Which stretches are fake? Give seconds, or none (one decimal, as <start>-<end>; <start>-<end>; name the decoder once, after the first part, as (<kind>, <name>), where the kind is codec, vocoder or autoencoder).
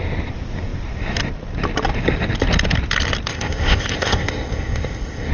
3.3-5.3 (codec, ZipCodec)